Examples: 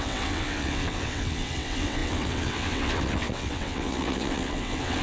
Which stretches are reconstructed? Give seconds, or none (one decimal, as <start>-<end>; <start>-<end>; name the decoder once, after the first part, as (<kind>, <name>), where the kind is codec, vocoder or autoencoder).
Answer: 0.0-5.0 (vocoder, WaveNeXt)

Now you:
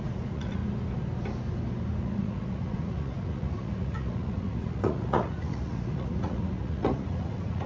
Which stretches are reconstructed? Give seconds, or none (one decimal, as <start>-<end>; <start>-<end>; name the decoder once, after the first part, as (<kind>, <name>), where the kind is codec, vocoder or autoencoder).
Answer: 0.0-0.6 (vocoder, Vocos); 2.0-7.7

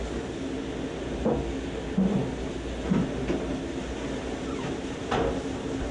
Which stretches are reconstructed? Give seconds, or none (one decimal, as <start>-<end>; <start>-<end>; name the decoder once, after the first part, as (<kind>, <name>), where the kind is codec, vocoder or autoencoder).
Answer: none